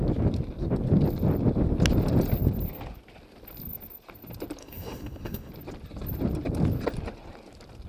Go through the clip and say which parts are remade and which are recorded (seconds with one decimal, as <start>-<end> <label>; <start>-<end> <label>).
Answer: 0.0-4.6 recorded; 4.6-5.5 remade; 5.5-7.9 recorded